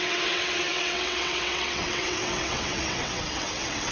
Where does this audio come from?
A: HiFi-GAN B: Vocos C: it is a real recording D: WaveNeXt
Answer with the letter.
D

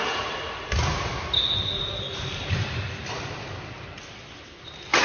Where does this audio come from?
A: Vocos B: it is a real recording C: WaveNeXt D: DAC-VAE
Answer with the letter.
B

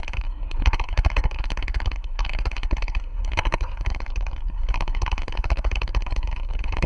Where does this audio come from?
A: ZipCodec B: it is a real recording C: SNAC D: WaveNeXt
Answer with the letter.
C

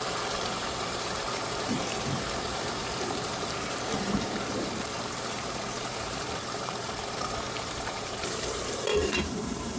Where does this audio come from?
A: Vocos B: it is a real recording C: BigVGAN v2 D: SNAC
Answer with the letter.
C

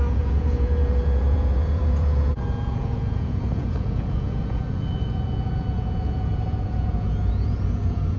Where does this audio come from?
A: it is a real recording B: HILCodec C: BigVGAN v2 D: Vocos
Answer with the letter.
D